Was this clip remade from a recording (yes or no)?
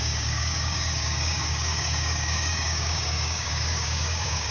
yes